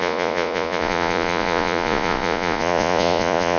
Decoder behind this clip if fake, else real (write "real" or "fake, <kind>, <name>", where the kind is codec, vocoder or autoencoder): fake, vocoder, Vocos